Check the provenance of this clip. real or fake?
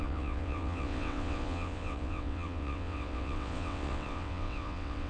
fake